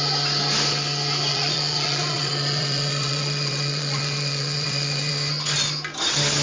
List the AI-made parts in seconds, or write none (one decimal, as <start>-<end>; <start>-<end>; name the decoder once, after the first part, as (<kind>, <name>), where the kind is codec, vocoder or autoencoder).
1.3-5.1 (vocoder, Vocos)